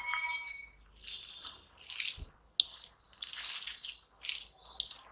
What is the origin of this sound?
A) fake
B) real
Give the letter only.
B